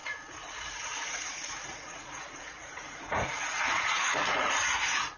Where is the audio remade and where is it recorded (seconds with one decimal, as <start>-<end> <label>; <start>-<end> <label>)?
0.0-5.2 remade